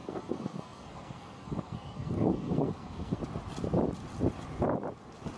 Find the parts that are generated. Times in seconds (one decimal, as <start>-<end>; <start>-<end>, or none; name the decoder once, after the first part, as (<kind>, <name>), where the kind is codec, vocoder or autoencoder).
0.0-3.2 (codec, SNAC)

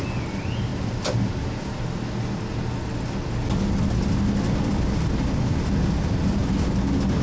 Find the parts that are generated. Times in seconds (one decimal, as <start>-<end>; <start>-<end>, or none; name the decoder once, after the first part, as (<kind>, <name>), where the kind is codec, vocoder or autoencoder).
none

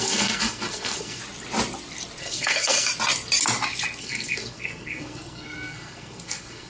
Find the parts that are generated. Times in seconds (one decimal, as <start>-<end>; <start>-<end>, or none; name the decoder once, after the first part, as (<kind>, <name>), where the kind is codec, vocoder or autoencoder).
0.0-1.2 (codec, SNAC); 2.2-2.9; 4.0-6.7